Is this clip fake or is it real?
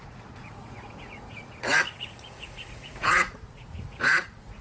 fake